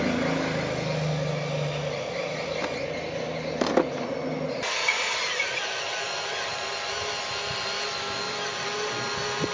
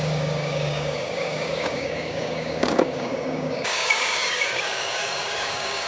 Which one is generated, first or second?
second